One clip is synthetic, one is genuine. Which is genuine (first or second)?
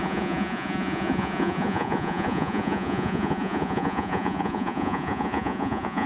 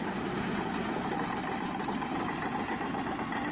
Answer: second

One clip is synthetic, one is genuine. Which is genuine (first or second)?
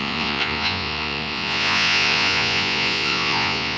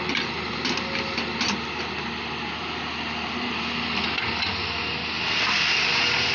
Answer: second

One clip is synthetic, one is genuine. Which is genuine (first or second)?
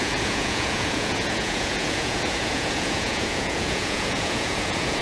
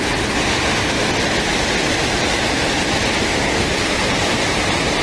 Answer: second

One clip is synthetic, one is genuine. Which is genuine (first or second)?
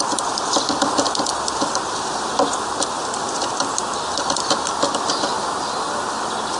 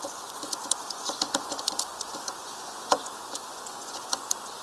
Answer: first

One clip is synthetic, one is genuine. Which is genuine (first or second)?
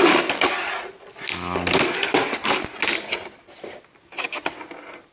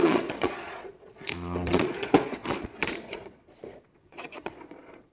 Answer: first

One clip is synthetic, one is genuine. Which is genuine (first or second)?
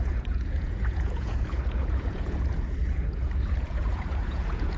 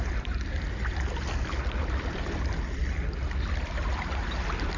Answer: second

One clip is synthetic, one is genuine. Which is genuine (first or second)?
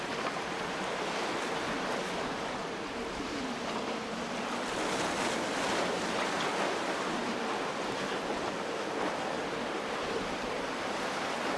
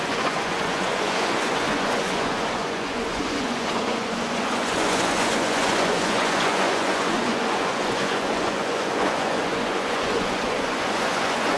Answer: first